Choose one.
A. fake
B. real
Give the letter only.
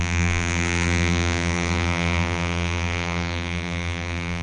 A